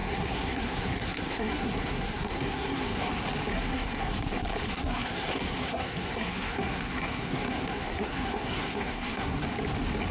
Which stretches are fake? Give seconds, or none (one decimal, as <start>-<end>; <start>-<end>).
0.0-3.1; 3.5-4.1; 4.7-9.4